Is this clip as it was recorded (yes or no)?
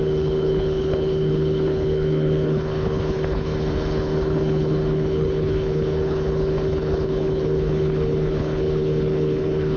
no